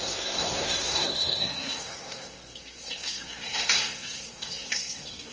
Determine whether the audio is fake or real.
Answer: fake